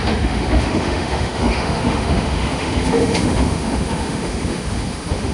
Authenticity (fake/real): fake